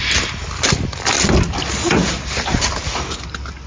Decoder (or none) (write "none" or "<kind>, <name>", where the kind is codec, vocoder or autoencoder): none